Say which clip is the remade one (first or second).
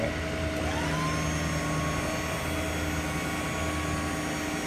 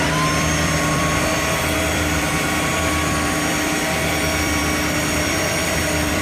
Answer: second